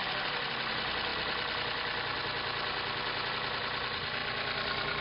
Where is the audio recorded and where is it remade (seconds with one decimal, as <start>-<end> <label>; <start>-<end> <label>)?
0.0-0.7 remade; 0.7-4.2 recorded; 4.2-5.0 remade